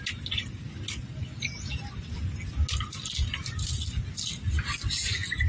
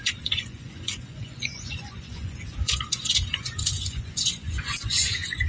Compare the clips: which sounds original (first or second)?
first